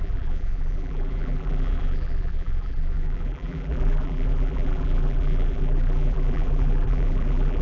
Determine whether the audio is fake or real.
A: fake